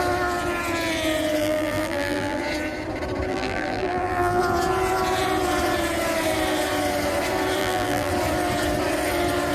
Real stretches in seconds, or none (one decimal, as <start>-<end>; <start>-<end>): 0.0-1.4; 2.4-3.3; 4.4-7.6; 8.1-9.5